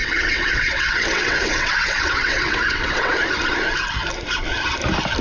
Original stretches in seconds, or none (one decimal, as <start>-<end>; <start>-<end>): 3.1-5.2